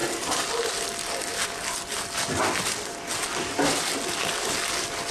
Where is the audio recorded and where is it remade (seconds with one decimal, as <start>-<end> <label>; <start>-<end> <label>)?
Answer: 0.0-5.1 recorded